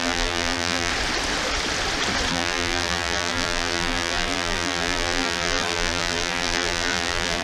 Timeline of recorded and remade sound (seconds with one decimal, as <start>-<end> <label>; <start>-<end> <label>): 0.0-0.9 remade; 0.9-2.3 recorded; 2.3-7.4 remade